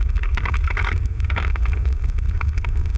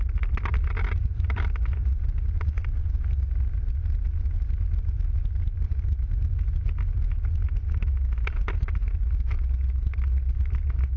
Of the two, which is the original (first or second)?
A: second